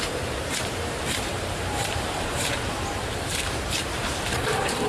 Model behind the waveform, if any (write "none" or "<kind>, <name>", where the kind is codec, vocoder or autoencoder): vocoder, BigVGAN v2